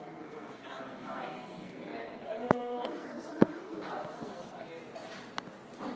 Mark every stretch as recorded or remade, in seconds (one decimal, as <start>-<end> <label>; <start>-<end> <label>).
0.0-4.8 remade; 4.8-6.0 recorded